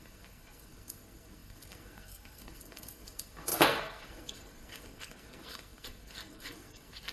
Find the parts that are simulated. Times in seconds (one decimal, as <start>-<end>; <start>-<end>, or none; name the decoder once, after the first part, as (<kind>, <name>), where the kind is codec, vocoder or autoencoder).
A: 0.0-7.1 (codec, SNAC)